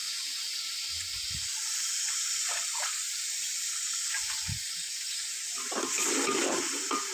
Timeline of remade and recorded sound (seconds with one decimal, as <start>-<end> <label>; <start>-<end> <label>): 0.0-4.3 remade; 4.3-7.1 recorded